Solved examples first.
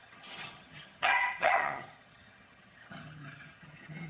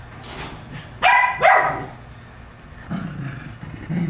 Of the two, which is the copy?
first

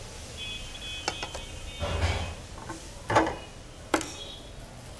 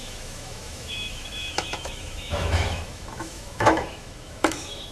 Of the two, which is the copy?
second